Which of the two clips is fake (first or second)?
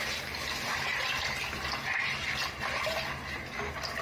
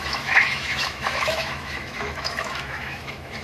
second